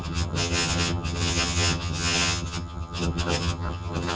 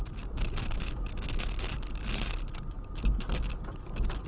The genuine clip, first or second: second